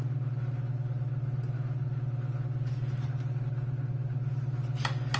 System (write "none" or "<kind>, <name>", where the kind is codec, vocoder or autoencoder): none